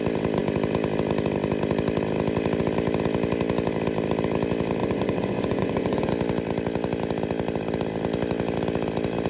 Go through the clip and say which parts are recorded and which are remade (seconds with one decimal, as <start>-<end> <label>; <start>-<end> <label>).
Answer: 0.0-4.8 recorded; 4.8-6.1 remade; 6.1-9.3 recorded

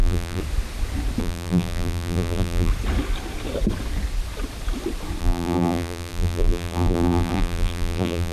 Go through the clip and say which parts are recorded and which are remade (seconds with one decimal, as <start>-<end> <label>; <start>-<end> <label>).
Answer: 0.0-0.4 remade; 0.4-1.2 recorded; 1.2-2.7 remade; 2.7-5.2 recorded; 5.2-8.3 remade